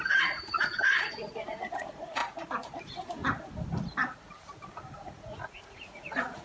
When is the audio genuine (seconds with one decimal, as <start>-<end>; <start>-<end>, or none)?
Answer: 2.2-2.8; 3.2-4.9